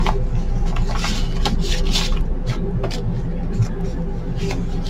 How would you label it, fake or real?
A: real